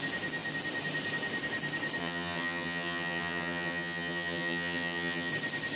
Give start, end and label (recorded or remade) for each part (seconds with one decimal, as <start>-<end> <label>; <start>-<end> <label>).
0.0-2.0 recorded; 2.0-5.3 remade; 5.3-5.8 recorded